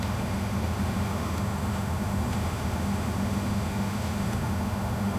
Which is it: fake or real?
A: fake